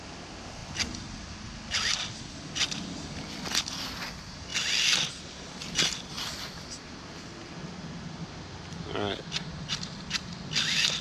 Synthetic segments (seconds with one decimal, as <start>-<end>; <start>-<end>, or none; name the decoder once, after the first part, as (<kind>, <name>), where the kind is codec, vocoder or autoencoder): none